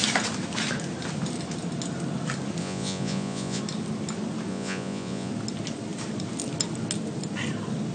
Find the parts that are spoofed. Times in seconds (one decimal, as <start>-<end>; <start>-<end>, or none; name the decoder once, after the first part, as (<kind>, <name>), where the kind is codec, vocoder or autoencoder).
2.6-3.6 (vocoder, Vocos); 4.5-5.3